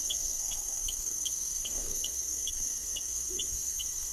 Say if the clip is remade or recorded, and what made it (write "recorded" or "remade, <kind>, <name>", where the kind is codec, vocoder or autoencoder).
remade, codec, SNAC